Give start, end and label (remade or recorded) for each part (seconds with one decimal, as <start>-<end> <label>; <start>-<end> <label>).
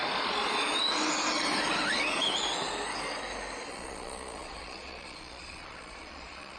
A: 0.0-3.7 recorded; 3.7-6.6 remade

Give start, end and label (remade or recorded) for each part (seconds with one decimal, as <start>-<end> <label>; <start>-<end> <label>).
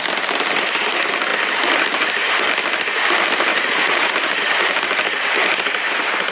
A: 0.0-3.5 recorded; 3.5-4.1 remade; 4.1-6.3 recorded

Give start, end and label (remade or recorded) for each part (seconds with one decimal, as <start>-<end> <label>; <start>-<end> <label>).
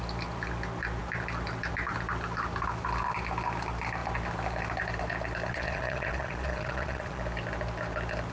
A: 0.0-5.5 recorded; 5.5-7.2 remade; 7.2-8.3 recorded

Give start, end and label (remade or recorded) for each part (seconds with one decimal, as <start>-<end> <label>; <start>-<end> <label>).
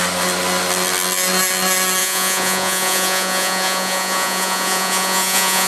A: 0.0-2.0 recorded; 2.0-5.7 remade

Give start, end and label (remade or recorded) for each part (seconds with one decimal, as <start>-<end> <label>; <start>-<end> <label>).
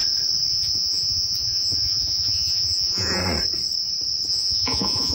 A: 0.0-0.5 recorded; 0.5-3.2 remade; 3.2-4.3 recorded; 4.3-5.1 remade